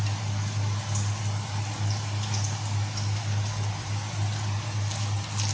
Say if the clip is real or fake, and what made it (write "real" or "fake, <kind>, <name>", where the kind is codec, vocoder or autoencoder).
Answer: real